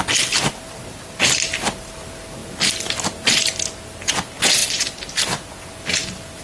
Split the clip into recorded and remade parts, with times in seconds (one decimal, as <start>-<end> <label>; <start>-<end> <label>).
0.0-6.4 recorded